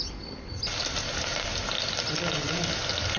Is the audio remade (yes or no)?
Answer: no